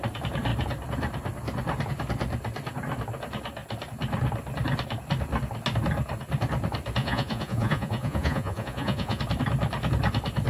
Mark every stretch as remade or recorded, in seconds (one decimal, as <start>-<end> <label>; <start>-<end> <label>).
0.0-7.0 recorded; 7.0-9.2 remade; 9.2-10.5 recorded